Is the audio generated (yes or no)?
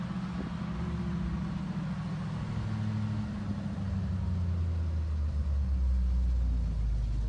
no